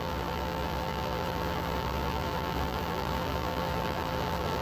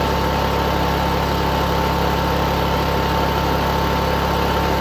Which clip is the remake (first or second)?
first